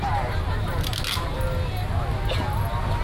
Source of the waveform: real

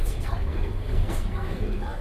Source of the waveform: fake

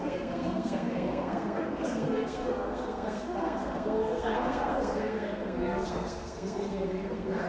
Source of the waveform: fake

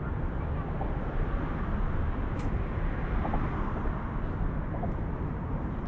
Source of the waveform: real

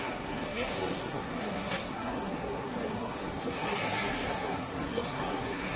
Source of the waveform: fake